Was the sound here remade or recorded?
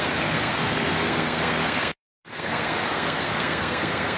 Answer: remade